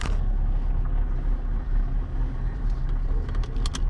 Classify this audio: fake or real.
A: real